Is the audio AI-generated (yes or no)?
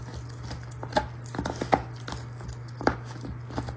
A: no